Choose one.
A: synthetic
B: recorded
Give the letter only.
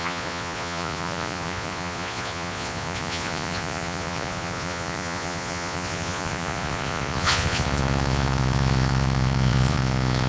A